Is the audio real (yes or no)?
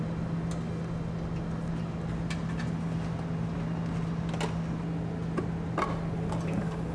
yes